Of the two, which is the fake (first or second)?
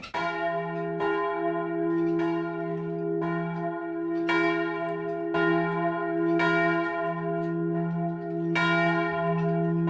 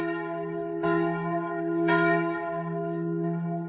second